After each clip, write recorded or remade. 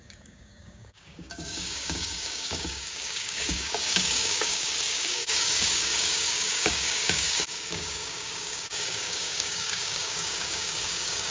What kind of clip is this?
remade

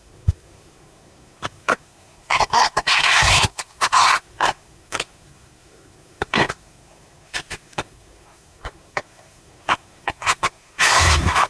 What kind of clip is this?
remade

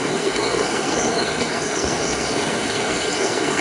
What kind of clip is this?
remade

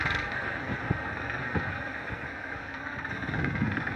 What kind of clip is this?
remade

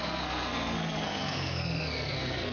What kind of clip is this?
remade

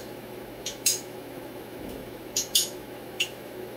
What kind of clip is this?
remade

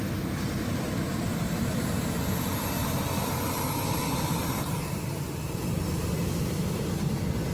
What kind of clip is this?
recorded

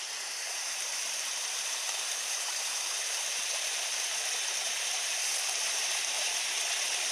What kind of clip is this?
remade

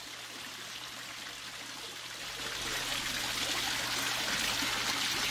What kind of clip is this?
recorded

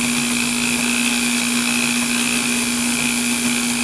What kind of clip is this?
recorded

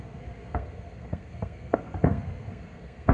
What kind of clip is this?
remade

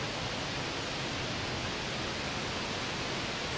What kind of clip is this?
recorded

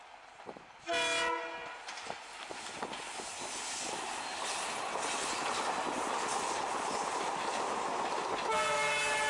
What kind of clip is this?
recorded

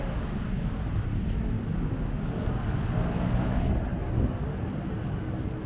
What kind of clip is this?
recorded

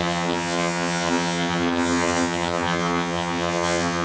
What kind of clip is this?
remade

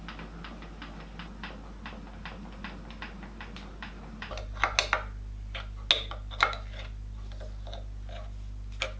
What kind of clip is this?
recorded